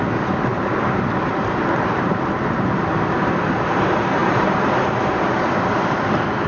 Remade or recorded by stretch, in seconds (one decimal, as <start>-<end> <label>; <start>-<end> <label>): 0.0-0.5 recorded; 0.5-3.4 remade; 3.4-4.2 recorded; 4.2-4.7 remade; 4.7-6.5 recorded